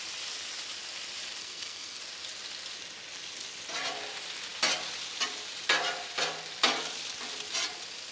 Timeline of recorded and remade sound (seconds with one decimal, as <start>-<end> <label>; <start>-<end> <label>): 0.0-1.4 recorded; 1.4-2.0 remade; 2.0-8.1 recorded